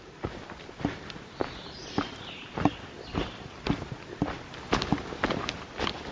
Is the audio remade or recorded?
recorded